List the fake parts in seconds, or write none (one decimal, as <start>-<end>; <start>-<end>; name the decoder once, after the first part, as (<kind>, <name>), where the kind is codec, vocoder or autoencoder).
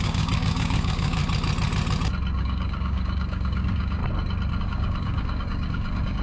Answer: 0.0-1.2 (codec, DAC); 2.4-4.0; 4.6-6.2